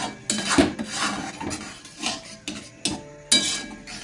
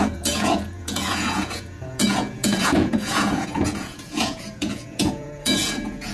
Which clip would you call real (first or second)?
first